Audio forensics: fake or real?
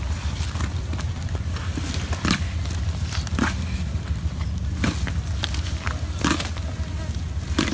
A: real